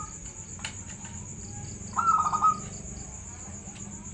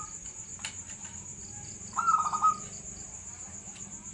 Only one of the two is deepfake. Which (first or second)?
second